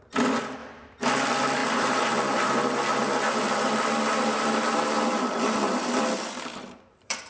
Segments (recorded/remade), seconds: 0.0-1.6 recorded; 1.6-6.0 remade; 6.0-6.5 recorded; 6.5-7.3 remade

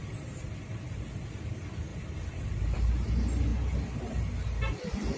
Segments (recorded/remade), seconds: 0.0-1.2 remade; 1.2-1.9 recorded; 1.9-3.1 remade; 3.1-5.2 recorded

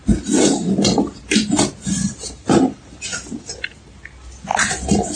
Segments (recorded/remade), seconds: 0.0-3.0 remade; 3.0-4.5 recorded; 4.5-5.2 remade